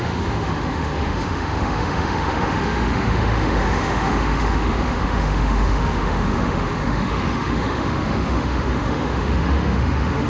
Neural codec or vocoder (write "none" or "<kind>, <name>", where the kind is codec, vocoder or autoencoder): autoencoder, DAC-VAE